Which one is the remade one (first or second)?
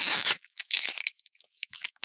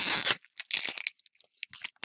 first